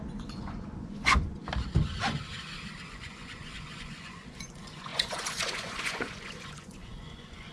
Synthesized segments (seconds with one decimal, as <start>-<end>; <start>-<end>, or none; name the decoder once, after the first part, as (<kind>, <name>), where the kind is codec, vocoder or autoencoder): 0.0-1.4 (vocoder, Vocos); 2.9-7.5